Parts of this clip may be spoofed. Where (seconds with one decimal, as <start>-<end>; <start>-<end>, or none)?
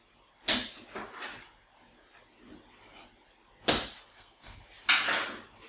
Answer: 4.1-4.6